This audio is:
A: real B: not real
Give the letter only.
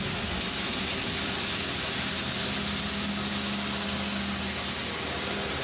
A